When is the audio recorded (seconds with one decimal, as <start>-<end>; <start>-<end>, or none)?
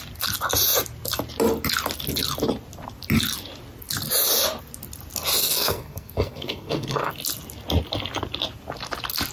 0.0-5.4; 7.1-9.3